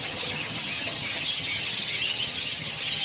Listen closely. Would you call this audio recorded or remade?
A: remade